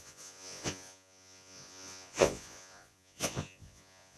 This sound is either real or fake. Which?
fake